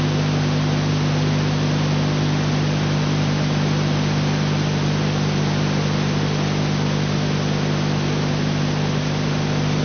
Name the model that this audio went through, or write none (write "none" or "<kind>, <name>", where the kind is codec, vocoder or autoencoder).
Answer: none